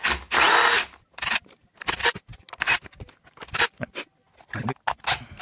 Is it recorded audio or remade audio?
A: recorded